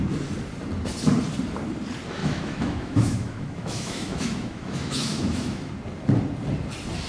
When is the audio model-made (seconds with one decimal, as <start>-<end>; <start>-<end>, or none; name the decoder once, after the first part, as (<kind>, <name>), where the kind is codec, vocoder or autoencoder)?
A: 2.2-5.7 (autoencoder, DAC-VAE)